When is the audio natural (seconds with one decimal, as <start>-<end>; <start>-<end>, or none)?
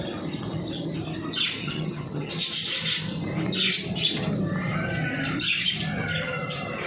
0.0-1.6; 2.3-6.9